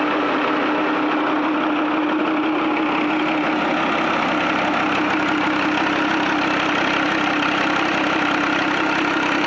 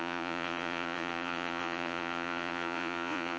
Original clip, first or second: first